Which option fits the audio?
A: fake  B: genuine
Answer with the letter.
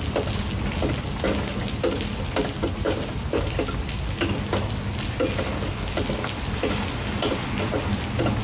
B